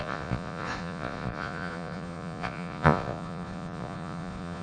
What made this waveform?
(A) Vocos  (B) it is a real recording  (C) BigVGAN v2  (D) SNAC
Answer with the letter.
A